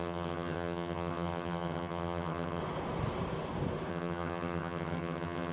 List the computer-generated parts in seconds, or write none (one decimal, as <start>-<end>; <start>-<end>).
0.0-2.6; 3.9-5.5